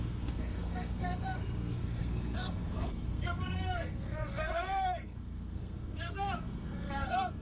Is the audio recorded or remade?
remade